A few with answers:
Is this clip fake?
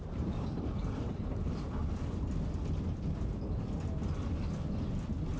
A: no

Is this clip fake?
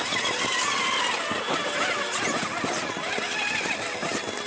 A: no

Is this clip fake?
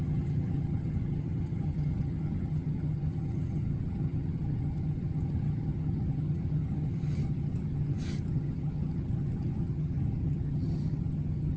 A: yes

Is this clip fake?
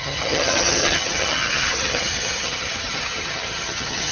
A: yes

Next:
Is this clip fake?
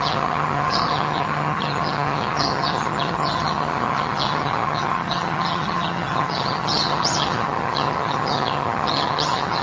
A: yes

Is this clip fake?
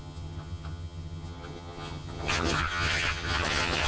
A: yes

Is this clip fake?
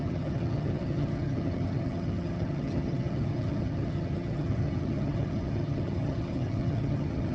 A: yes